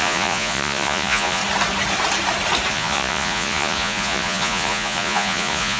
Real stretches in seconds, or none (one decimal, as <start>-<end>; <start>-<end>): 1.4-2.7